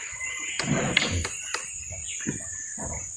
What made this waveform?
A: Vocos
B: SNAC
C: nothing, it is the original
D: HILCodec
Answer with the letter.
C